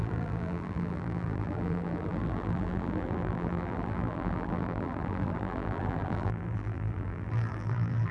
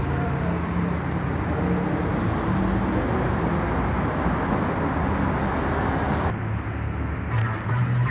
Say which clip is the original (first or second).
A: second